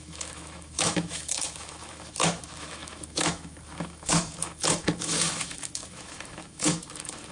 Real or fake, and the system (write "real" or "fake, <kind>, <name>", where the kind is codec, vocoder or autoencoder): fake, autoencoder, DAC-VAE